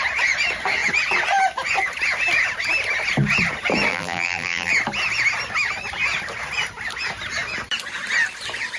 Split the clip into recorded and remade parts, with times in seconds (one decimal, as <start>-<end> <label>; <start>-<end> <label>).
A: 0.0-3.9 recorded; 3.9-4.7 remade; 4.7-8.8 recorded